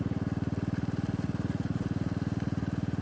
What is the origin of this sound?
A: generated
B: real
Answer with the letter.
B